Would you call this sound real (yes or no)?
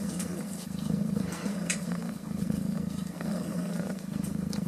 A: no